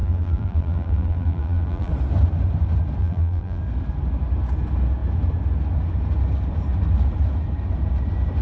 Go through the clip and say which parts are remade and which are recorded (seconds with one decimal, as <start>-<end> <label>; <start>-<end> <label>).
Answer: 0.0-1.9 remade; 1.9-3.0 recorded; 3.0-3.6 remade; 3.6-8.4 recorded